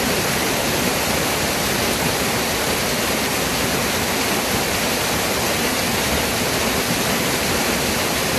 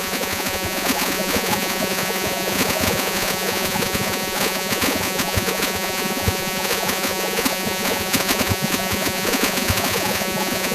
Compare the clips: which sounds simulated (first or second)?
second